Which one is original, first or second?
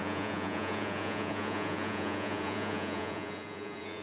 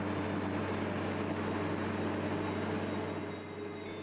second